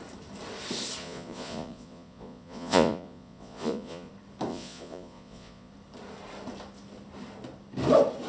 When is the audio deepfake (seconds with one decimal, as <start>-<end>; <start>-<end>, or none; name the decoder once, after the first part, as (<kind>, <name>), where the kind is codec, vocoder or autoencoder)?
1.0-4.1 (vocoder, Vocos); 4.5-5.7